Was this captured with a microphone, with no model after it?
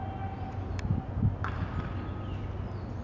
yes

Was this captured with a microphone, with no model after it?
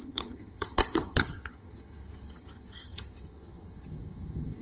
no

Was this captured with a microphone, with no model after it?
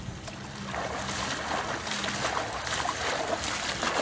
yes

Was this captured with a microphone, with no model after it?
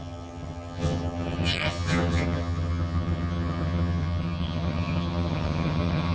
no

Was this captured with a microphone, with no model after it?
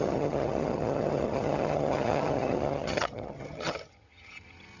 no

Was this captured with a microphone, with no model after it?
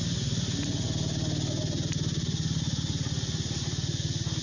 yes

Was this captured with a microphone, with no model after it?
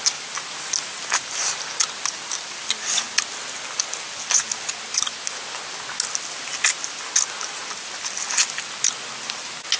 yes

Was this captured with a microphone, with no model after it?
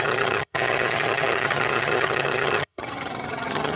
no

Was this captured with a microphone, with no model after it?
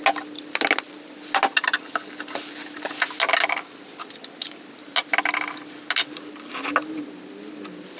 yes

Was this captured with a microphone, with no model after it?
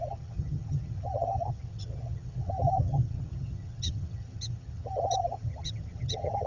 no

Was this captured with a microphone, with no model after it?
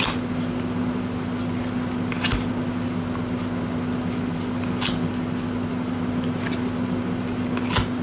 yes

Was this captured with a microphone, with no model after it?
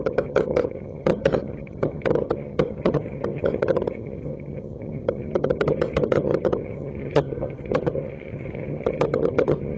no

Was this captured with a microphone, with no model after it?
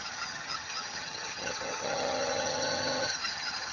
no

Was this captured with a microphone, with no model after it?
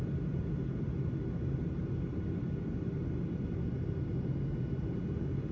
yes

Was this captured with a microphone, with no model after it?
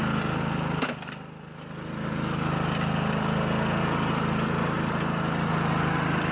yes